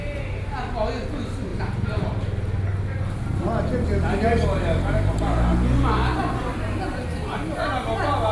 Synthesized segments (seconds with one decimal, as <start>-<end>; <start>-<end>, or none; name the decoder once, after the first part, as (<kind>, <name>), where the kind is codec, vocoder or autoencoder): 1.5-2.2 (vocoder, BigVGAN v2)